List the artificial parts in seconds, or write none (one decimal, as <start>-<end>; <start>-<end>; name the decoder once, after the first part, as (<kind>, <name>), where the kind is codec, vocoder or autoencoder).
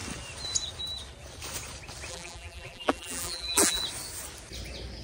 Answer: 2.1-3.8 (vocoder, BigVGAN v2)